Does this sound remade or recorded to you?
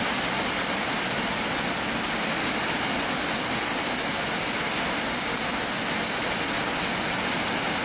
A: recorded